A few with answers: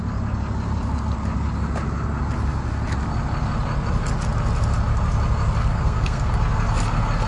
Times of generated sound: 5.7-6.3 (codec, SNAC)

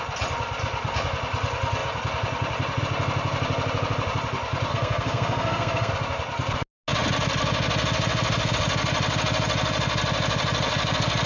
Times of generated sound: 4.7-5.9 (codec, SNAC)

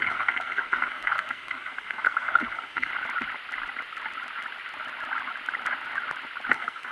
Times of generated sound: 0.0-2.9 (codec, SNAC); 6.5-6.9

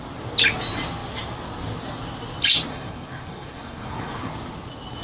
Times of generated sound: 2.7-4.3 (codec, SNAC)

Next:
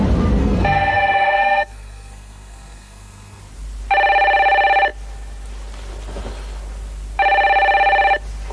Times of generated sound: 0.4-3.4 (codec, SNAC)

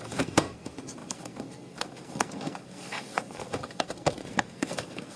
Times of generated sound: 0.0-5.2 (codec, SNAC)

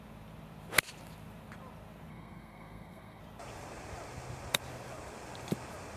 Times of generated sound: 2.1-3.2 (codec, SNAC)